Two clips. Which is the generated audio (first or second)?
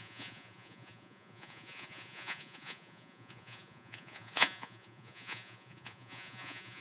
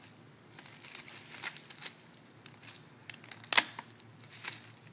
first